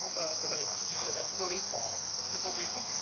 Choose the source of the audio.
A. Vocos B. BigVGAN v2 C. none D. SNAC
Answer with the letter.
D